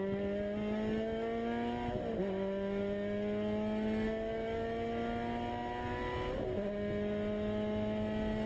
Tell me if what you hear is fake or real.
real